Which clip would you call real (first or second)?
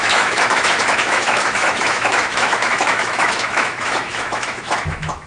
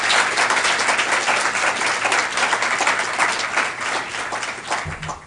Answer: second